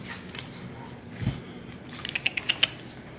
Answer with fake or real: real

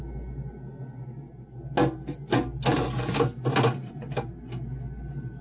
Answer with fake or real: real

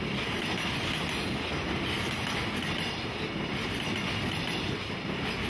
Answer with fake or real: real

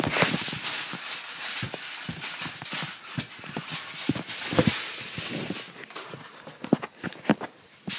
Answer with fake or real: real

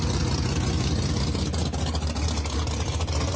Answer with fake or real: real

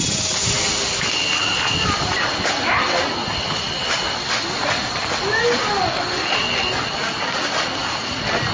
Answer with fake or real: real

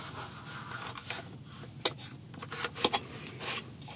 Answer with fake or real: real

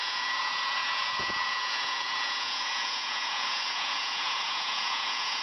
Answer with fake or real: fake